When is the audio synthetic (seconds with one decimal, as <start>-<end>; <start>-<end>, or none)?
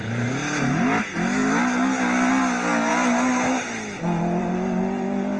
none